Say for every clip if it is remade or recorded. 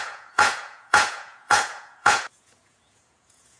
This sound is remade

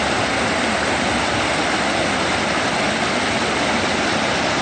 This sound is recorded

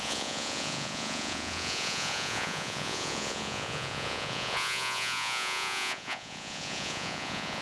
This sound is remade